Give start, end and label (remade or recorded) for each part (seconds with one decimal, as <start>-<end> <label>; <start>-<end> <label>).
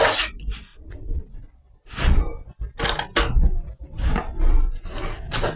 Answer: 0.0-0.7 recorded; 0.7-2.2 remade; 2.2-5.6 recorded